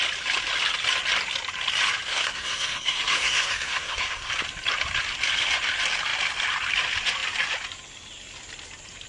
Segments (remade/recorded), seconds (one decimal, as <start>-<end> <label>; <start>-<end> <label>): 0.0-2.1 recorded; 2.1-4.3 remade; 4.3-9.1 recorded